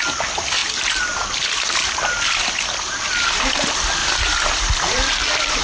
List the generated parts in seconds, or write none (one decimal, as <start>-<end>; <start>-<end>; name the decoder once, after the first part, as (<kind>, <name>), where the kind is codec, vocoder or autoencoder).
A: none